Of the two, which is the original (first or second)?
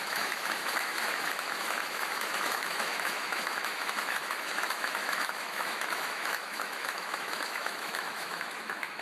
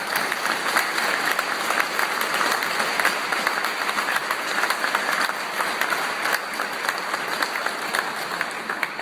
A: second